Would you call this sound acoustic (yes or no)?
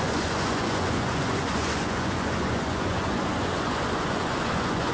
no